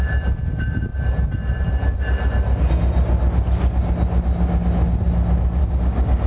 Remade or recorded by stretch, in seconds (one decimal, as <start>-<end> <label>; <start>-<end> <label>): 0.0-5.6 recorded; 5.6-6.3 remade